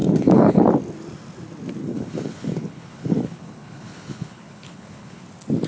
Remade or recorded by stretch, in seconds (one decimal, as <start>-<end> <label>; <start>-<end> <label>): 0.0-0.7 remade; 0.7-1.8 recorded; 1.8-5.2 remade; 5.2-5.7 recorded